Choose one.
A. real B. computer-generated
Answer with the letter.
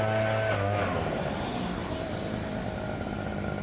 A